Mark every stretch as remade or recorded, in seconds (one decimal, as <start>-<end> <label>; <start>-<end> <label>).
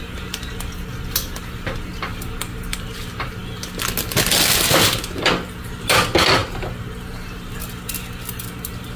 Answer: 0.0-9.0 recorded